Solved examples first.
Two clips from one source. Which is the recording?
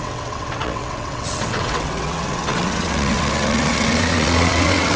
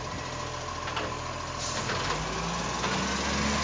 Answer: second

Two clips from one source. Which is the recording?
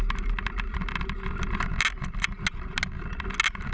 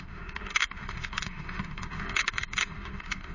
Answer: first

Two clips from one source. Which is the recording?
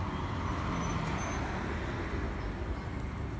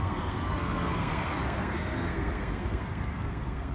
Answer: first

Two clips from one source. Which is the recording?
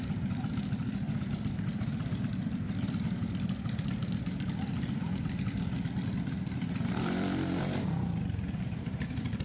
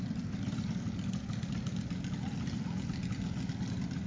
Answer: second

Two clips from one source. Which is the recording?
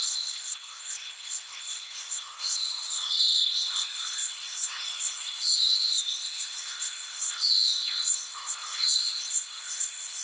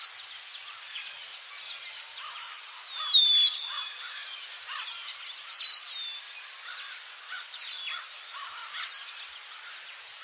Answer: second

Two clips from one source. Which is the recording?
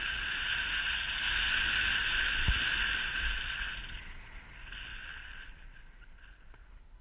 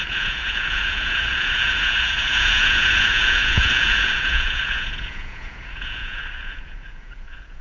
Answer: first